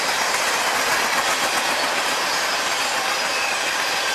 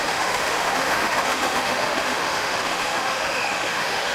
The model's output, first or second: second